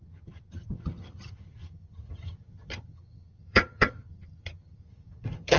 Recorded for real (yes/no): no